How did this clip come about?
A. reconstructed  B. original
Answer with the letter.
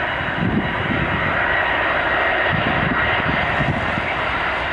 B